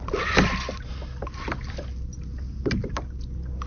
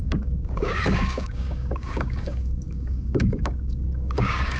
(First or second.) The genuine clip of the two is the first